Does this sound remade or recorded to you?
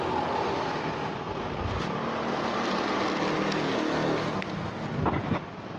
recorded